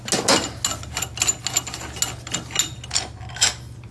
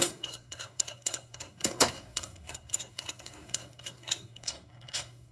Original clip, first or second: first